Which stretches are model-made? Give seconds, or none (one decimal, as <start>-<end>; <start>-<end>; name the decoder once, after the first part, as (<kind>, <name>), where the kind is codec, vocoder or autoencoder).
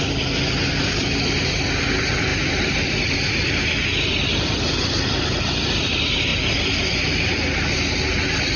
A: none